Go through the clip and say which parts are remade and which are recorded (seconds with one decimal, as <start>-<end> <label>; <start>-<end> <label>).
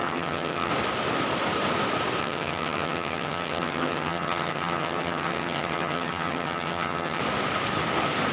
0.0-0.7 remade; 0.7-2.2 recorded; 2.2-7.2 remade; 7.2-8.3 recorded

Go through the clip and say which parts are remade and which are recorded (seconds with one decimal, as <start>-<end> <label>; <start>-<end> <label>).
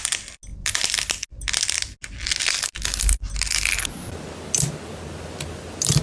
0.0-6.0 recorded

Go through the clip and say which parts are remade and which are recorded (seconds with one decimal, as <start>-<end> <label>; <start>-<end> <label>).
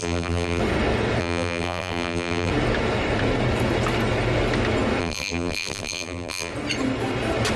0.0-0.6 remade; 0.6-1.2 recorded; 1.2-2.5 remade; 2.5-5.0 recorded; 5.0-6.5 remade; 6.5-7.6 recorded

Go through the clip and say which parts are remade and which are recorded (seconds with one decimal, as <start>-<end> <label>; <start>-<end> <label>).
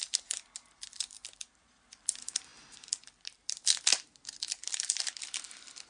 0.0-5.9 recorded